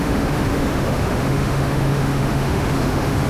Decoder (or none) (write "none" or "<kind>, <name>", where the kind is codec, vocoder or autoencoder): autoencoder, DAC-VAE